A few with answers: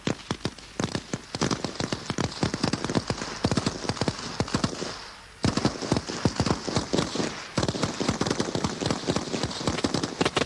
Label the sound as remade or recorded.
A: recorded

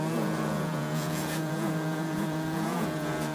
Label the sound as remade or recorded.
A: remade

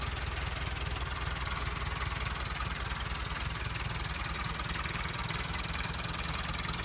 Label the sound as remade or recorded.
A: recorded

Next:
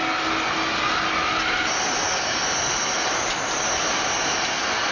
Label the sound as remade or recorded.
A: recorded